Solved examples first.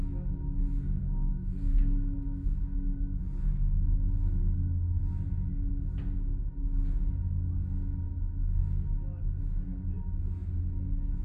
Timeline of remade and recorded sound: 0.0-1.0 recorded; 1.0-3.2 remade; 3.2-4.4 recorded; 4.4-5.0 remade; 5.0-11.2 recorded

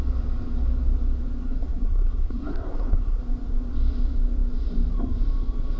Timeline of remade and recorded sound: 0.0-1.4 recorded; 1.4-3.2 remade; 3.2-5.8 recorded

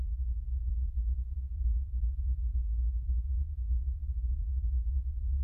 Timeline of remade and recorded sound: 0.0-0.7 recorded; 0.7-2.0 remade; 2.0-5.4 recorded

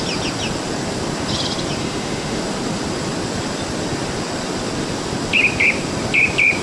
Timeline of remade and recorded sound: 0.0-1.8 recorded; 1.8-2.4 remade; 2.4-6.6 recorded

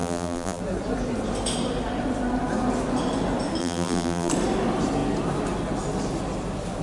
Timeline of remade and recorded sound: 0.0-0.6 remade; 0.6-3.6 recorded; 3.6-4.3 remade; 4.3-6.8 recorded

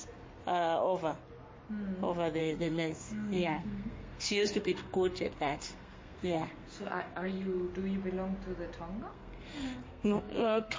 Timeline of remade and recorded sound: 0.0-2.4 recorded; 2.4-7.7 remade; 7.7-9.1 recorded; 9.1-10.8 remade

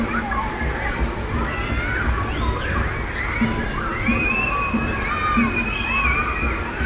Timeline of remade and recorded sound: 0.0-6.9 recorded

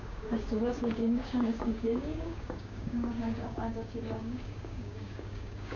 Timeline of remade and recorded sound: 0.0-5.8 remade